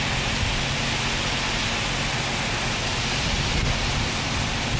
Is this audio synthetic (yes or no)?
no